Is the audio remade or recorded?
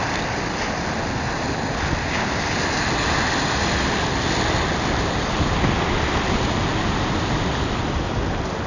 recorded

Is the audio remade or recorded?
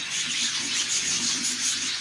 remade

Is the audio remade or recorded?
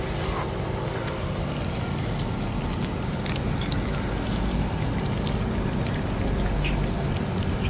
recorded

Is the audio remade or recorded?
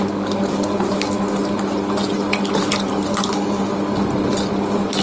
recorded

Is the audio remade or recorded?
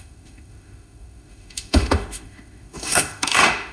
remade